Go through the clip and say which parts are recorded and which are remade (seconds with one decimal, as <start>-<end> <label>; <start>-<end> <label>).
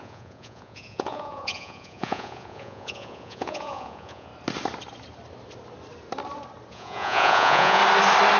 0.0-4.3 remade; 4.3-6.7 recorded; 6.7-7.8 remade; 7.8-8.4 recorded